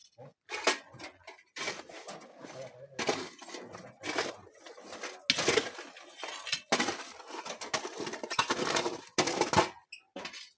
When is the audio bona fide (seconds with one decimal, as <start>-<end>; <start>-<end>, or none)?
0.0-10.6